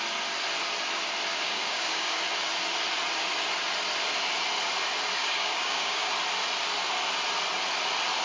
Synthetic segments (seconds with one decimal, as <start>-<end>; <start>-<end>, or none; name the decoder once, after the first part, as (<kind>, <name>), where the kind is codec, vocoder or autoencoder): 1.3-2.2 (codec, DAC); 5.2-6.1